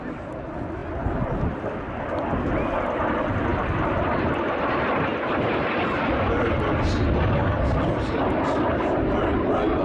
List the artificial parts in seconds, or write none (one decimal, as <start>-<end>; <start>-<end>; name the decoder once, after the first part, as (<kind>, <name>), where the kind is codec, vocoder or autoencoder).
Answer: none